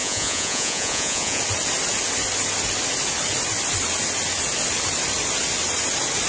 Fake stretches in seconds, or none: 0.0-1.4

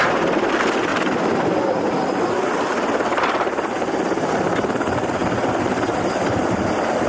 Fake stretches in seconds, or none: 0.9-2.2; 5.2-6.1

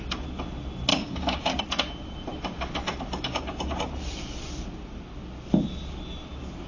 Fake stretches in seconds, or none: 0.9-1.6

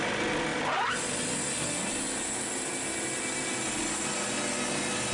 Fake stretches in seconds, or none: none

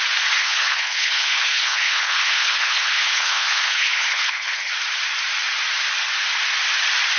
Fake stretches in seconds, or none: 0.4-4.7

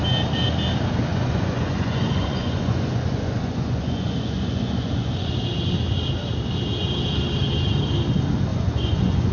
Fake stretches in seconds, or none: 1.1-5.3; 8.5-9.3